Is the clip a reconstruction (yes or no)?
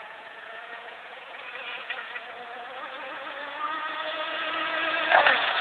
yes